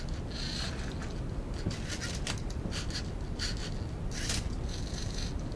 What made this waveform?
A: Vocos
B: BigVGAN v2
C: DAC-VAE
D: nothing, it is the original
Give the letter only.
D